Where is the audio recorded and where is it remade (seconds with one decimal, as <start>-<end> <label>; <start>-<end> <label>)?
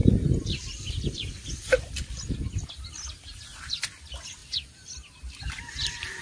0.0-6.2 recorded